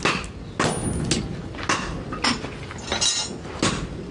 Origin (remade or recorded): recorded